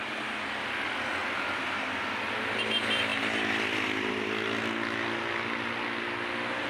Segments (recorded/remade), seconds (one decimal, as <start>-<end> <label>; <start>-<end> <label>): 0.0-3.1 recorded; 3.1-4.1 remade; 4.1-6.7 recorded